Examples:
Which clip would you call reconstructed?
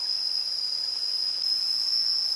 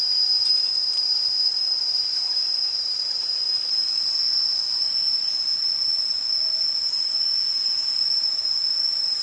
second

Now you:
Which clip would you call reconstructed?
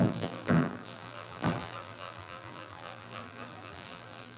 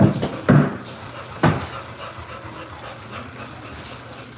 first